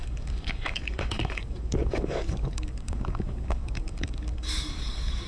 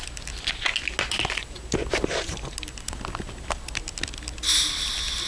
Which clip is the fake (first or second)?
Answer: first